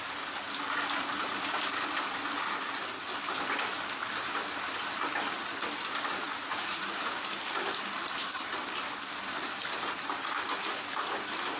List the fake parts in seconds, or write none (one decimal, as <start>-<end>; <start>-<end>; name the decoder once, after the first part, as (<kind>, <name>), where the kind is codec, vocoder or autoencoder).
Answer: 6.2-7.2 (vocoder, Vocos)